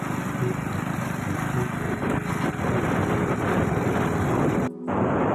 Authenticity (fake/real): real